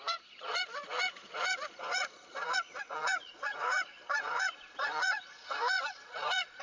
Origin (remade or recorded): remade